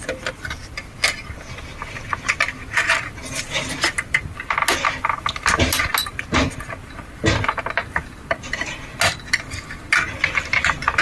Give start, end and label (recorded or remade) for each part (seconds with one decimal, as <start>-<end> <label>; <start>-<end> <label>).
0.0-11.0 recorded